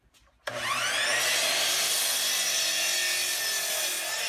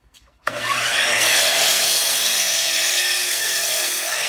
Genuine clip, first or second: first